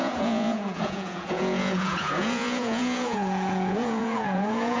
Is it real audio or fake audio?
fake